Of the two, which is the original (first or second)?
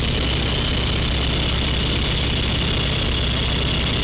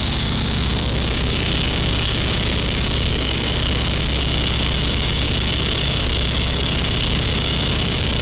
first